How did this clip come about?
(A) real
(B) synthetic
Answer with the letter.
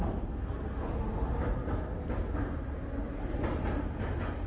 A